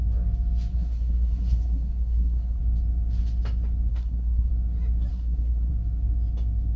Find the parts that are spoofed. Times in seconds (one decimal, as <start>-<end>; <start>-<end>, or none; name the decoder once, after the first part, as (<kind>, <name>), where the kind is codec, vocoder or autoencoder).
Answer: 0.7-2.6 (codec, SNAC); 3.9-4.5; 5.1-5.7